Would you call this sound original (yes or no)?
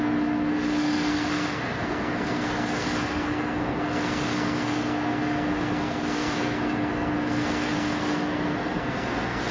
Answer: no